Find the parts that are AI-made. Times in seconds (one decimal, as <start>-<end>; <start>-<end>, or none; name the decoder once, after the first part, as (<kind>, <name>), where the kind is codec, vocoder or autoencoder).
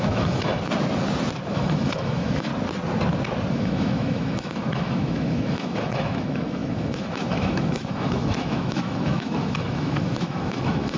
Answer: 0.0-0.5 (autoencoder, DAC-VAE); 1.5-2.5; 3.5-11.0